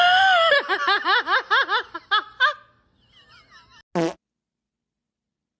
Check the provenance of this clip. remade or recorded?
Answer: recorded